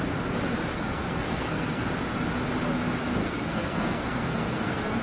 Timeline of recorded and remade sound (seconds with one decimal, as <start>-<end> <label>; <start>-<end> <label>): 0.0-0.7 recorded; 0.7-1.9 remade; 1.9-3.2 recorded; 3.2-5.0 remade